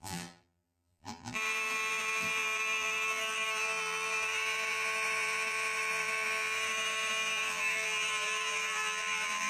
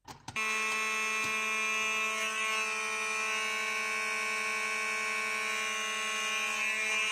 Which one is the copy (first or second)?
first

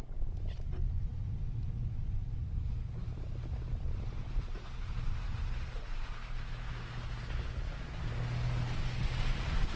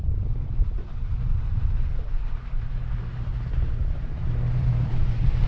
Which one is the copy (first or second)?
second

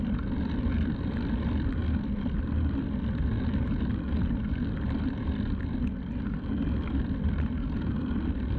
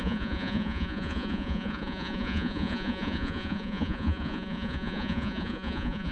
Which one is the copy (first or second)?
second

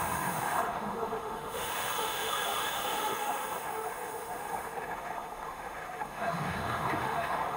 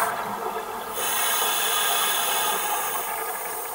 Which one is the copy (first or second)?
first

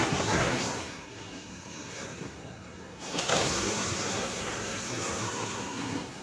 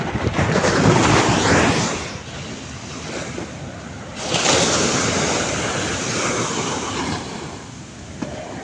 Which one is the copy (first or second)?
first